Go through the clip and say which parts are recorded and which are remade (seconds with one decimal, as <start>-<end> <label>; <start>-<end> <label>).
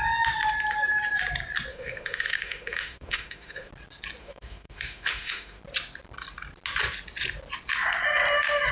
0.0-1.7 recorded; 1.7-3.7 remade; 3.7-4.2 recorded; 4.2-5.6 remade; 5.6-8.7 recorded